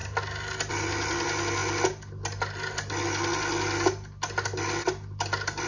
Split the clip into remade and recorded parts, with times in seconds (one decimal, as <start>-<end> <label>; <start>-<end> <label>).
0.0-5.7 recorded